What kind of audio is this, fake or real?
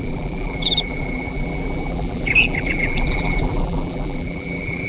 fake